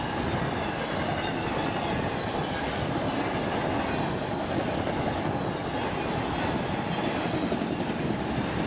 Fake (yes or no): no